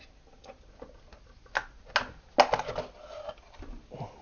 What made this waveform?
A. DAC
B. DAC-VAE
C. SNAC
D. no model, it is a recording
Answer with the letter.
D